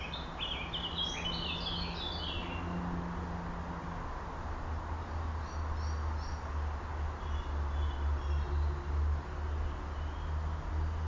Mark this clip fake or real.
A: real